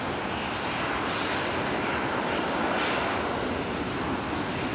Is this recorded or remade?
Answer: recorded